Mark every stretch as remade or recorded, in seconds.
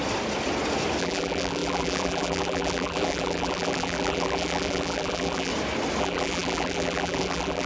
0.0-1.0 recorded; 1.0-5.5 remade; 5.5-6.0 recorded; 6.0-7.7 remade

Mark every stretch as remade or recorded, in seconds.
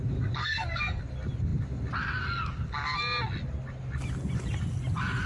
0.0-0.4 recorded; 0.4-1.0 remade; 1.0-5.3 recorded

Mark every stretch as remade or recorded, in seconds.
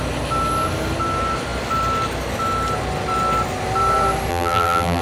0.0-4.3 recorded; 4.3-5.0 remade